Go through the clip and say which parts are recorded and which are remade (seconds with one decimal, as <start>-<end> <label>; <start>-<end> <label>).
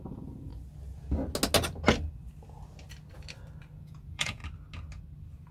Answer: 0.0-0.5 remade; 0.5-3.8 recorded; 3.8-4.4 remade; 4.4-5.5 recorded